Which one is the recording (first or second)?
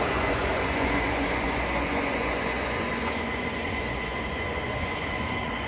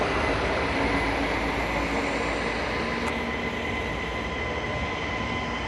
second